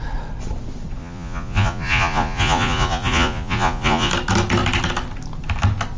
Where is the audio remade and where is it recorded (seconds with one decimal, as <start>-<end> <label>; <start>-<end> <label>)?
0.0-1.0 recorded; 1.0-4.1 remade; 4.1-6.0 recorded